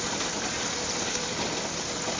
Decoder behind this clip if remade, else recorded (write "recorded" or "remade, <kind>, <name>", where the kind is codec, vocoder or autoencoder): recorded